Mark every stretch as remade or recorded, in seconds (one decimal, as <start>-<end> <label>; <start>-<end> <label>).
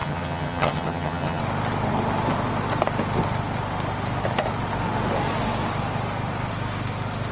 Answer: 0.0-1.4 remade; 1.4-7.3 recorded